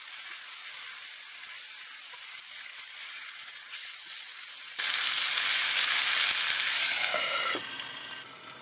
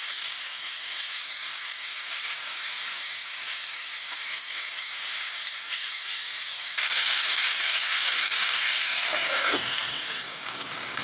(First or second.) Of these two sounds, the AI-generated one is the second